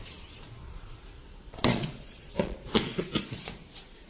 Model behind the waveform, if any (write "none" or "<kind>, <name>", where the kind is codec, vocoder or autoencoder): vocoder, Vocos